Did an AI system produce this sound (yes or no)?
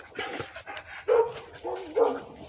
no